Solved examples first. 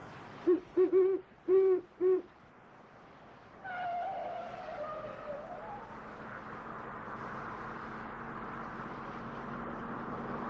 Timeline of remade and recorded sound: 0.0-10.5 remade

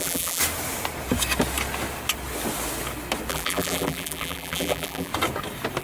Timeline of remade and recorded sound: 0.0-0.4 remade; 0.4-3.3 recorded; 3.3-5.1 remade; 5.1-5.8 recorded

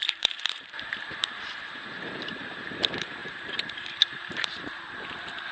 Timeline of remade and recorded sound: 0.0-5.5 remade